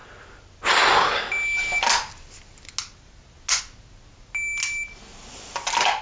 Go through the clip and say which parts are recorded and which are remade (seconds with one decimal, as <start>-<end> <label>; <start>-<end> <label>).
0.0-6.0 recorded